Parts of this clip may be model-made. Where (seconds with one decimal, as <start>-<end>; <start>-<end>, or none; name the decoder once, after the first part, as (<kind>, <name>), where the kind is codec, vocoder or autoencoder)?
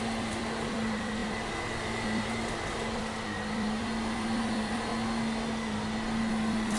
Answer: 0.0-4.9 (vocoder, BigVGAN v2); 6.3-6.8